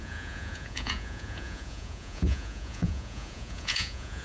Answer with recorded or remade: remade